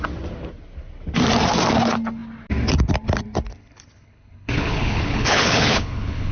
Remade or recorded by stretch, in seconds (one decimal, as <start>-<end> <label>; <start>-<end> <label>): 0.0-3.6 recorded; 3.6-6.3 remade